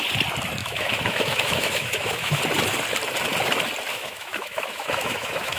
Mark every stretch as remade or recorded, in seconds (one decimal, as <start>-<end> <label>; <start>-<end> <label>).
0.0-0.6 recorded; 0.6-2.4 remade; 2.4-3.9 recorded; 3.9-5.6 remade